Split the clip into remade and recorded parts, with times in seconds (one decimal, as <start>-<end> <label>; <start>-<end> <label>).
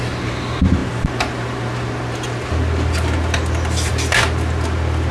0.0-5.1 recorded